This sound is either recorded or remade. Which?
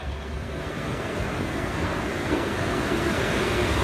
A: remade